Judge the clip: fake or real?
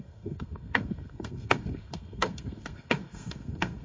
fake